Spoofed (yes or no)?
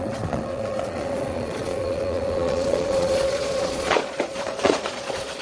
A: yes